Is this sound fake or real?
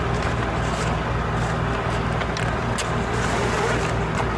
real